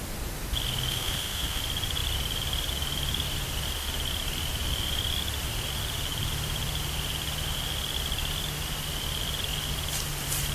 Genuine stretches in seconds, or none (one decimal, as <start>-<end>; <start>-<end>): 0.0-0.9; 1.6-10.5